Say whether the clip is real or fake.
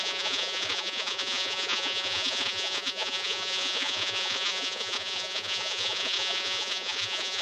fake